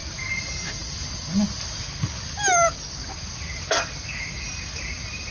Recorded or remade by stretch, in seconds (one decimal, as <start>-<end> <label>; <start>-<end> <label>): 0.0-5.3 recorded